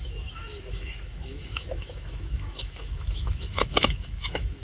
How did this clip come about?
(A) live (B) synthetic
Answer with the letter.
B